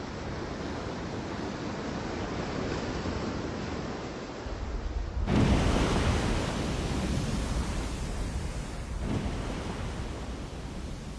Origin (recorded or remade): recorded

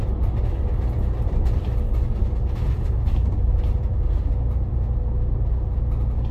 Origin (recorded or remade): recorded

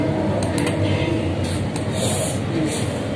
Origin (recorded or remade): recorded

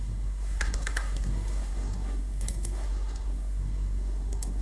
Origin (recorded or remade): remade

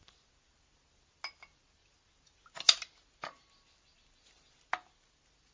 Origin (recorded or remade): recorded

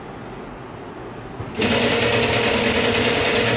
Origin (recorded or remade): recorded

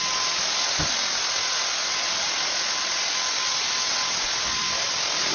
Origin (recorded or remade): recorded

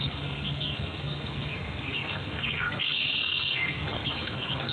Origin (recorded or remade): remade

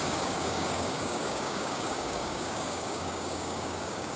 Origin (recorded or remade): remade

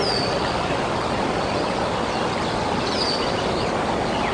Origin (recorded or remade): recorded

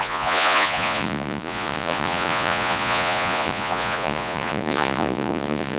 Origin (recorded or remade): remade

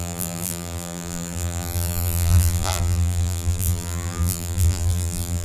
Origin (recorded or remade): remade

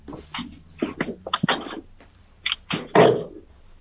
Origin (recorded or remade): recorded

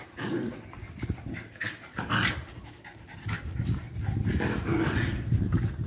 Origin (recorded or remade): recorded